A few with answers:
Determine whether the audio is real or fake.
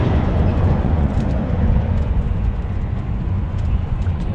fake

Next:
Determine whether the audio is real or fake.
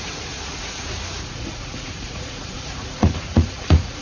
fake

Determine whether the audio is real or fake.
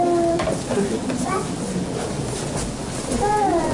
real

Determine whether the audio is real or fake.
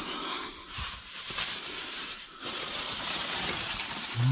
fake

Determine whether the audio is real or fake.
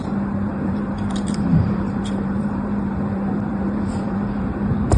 fake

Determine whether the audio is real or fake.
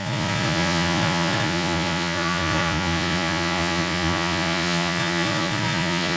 fake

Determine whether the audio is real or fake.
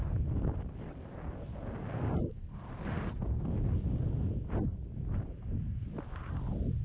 real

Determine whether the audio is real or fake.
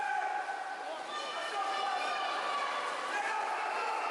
real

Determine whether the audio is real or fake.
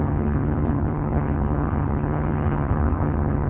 fake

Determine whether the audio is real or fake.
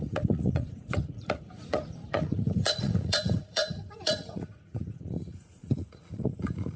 fake